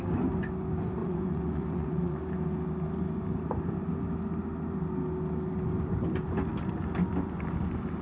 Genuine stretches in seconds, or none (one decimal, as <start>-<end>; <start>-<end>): 0.0-1.0; 2.2-8.0